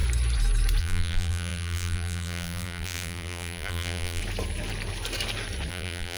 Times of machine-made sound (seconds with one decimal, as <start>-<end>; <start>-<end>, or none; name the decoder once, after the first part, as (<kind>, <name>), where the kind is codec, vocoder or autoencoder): 0.8-4.2 (vocoder, BigVGAN v2); 5.7-6.2